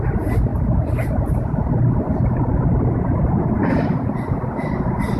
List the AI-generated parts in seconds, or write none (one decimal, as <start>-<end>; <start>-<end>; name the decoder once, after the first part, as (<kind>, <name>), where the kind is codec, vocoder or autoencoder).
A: none

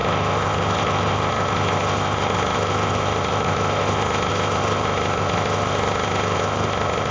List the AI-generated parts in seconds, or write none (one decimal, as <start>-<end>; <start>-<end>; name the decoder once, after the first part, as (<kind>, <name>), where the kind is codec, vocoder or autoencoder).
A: 0.0-7.1 (codec, ZipCodec)

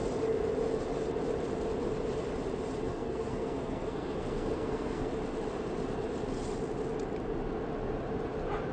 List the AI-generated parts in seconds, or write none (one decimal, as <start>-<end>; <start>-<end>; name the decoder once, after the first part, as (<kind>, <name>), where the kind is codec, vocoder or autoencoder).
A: 2.9-5.1 (codec, SNAC)

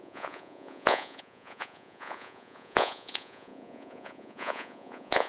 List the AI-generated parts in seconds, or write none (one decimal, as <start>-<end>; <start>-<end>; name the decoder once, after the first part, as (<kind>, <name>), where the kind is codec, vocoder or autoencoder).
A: 0.0-5.3 (vocoder, Vocos)

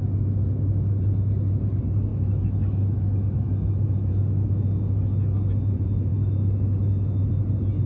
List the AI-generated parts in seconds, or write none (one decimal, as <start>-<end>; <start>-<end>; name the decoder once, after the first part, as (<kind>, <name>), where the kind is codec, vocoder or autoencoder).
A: 2.1-4.1 (autoencoder, DAC-VAE); 6.1-7.3